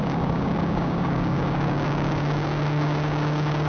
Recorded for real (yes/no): no